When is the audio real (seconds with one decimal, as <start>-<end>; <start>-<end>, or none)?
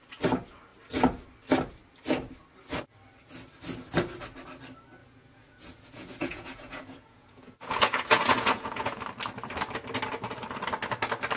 0.0-5.0; 9.0-11.4